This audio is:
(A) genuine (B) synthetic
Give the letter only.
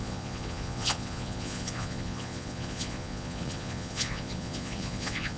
B